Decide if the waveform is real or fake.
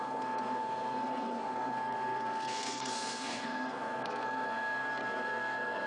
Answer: fake